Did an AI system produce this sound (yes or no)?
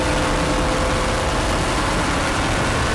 no